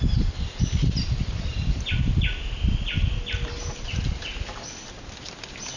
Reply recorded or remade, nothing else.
recorded